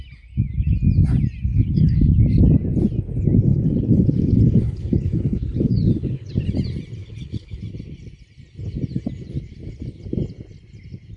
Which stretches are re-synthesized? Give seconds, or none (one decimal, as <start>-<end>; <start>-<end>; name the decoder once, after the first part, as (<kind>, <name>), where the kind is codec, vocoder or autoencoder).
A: 1.5-2.0 (codec, HILCodec); 3.5-6.3; 7.0-7.6